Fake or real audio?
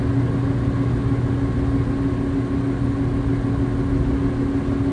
real